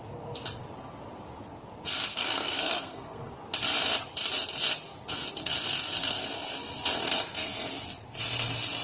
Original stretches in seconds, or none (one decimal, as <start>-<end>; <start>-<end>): 0.0-2.1; 3.3-5.4; 6.2-8.8